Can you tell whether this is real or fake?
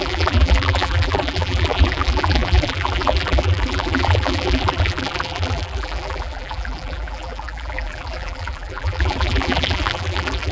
fake